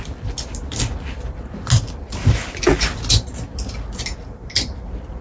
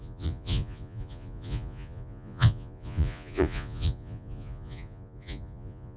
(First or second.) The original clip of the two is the first